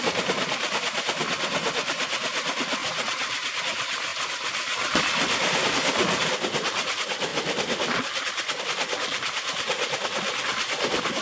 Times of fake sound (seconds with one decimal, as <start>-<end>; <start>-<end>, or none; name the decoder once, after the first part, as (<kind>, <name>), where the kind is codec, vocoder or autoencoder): none

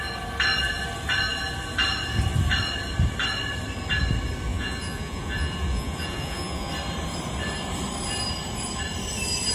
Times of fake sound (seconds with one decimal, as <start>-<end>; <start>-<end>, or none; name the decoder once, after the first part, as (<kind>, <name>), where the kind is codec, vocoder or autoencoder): 4.5-6.7 (vocoder, Vocos)

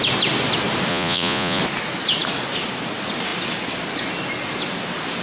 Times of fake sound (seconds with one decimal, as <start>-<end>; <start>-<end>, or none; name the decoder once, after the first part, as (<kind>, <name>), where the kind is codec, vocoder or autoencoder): 0.9-1.6 (vocoder, Vocos)

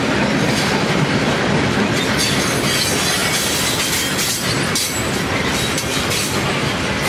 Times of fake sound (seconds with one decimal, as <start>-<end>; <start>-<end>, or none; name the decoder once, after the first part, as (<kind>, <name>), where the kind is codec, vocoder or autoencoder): none

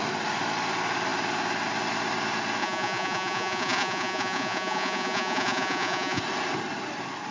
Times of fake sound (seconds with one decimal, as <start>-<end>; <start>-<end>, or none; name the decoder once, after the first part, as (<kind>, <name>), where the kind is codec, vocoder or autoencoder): 2.6-6.2 (vocoder, Vocos)

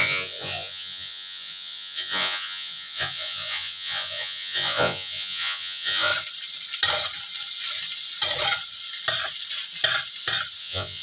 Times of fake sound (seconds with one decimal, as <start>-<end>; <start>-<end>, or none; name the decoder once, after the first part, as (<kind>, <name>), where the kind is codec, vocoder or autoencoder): 0.0-6.1 (vocoder, Vocos); 10.6-11.0

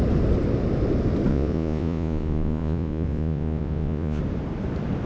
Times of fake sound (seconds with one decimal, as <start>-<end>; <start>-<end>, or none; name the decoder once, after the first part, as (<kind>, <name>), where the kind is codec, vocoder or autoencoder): 1.3-4.2 (vocoder, Vocos)